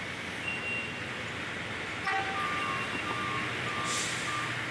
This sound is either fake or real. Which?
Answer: real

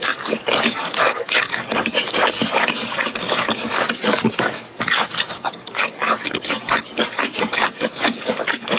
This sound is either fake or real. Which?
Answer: fake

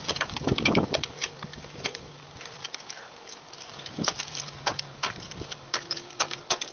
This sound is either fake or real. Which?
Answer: fake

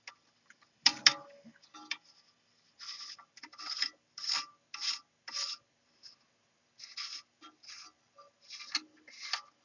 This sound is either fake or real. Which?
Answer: real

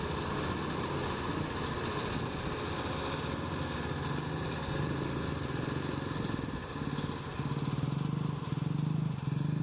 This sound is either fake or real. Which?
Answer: real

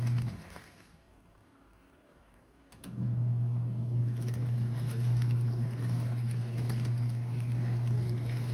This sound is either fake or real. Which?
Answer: fake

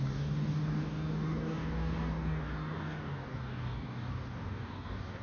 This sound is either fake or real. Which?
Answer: fake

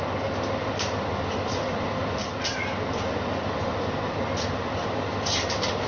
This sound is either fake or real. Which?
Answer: real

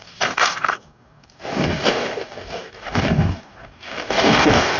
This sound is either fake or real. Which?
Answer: fake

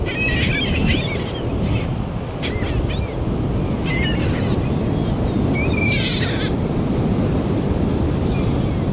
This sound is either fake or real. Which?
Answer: real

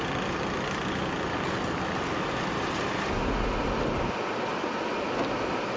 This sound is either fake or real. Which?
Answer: real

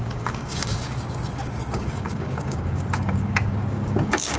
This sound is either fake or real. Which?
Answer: fake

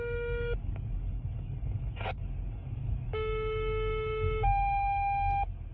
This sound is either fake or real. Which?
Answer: fake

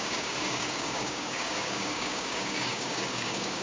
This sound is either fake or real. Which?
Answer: fake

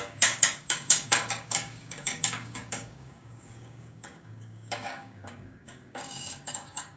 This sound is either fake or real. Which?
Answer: fake